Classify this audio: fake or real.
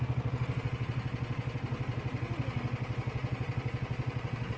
real